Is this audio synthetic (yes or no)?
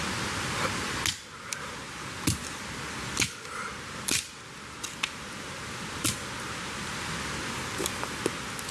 no